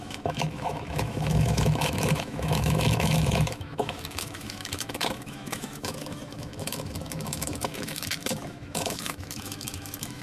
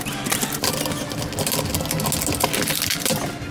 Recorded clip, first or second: second